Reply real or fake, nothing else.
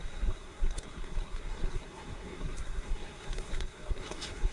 fake